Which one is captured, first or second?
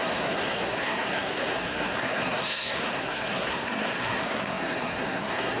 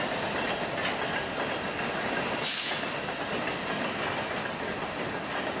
second